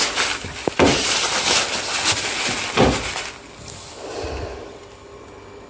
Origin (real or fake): real